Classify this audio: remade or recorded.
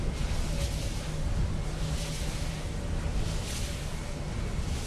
recorded